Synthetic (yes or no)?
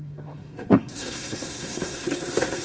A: yes